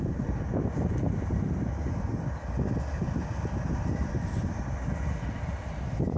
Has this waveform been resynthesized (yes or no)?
no